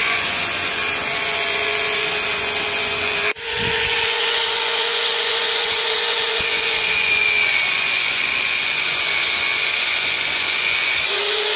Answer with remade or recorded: remade